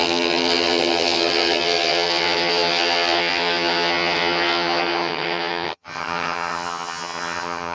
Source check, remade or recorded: remade